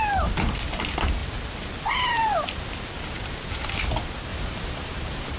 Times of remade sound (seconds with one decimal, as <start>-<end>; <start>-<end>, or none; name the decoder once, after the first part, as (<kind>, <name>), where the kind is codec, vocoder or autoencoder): 4.3-5.4 (vocoder, BigVGAN v2)